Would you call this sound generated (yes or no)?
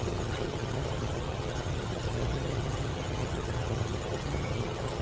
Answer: yes